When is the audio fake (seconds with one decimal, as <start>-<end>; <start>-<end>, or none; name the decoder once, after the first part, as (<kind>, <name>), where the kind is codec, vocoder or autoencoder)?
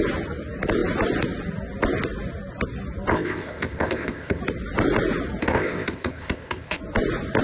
3.1-4.4 (codec, ZipCodec); 5.4-6.8